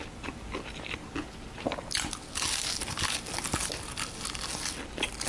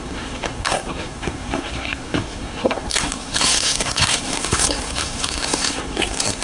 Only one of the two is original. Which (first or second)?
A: first